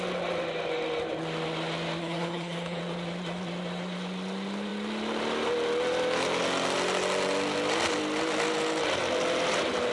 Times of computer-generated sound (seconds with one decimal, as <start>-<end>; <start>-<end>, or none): 2.0-2.8